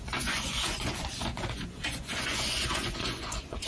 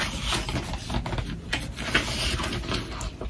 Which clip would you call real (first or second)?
second